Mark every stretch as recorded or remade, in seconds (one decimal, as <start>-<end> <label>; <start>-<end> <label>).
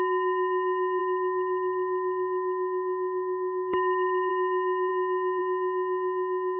0.0-1.0 recorded; 1.0-4.3 remade; 4.3-6.6 recorded